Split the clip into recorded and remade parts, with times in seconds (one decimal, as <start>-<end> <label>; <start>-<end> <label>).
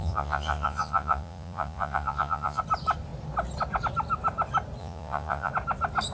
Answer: 0.0-2.6 remade; 2.6-4.8 recorded; 4.8-5.5 remade; 5.5-6.1 recorded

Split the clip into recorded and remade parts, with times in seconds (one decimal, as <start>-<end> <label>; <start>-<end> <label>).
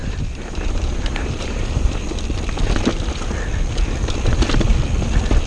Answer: 0.0-2.0 remade; 2.0-5.5 recorded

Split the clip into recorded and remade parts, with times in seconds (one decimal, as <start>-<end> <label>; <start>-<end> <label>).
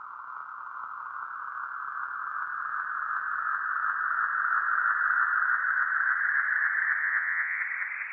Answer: 0.0-7.0 recorded; 7.0-7.6 remade; 7.6-8.1 recorded